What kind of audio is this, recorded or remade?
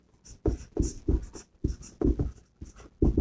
recorded